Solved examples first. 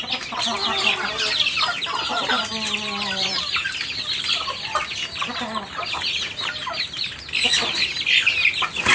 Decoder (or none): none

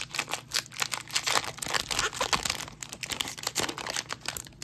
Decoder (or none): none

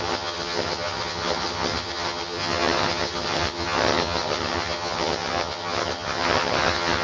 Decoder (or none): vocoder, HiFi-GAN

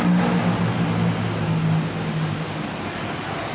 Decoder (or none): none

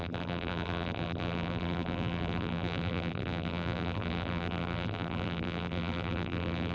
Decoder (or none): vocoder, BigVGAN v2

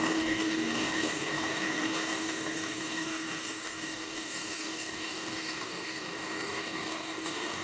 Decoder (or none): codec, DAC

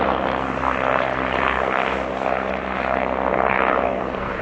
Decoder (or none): codec, SNAC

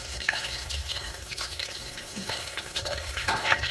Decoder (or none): codec, SNAC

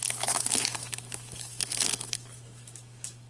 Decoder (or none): autoencoder, DAC-VAE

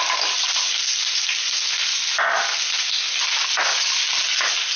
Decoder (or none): none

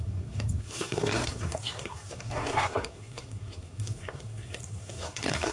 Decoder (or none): codec, SNAC